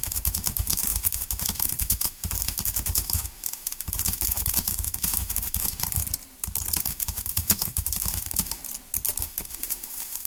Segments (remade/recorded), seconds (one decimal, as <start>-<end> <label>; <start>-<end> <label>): 0.0-6.0 remade; 6.0-6.8 recorded; 6.8-8.6 remade; 8.6-9.2 recorded; 9.2-10.3 remade